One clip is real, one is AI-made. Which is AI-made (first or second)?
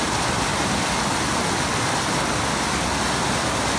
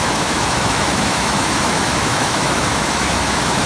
second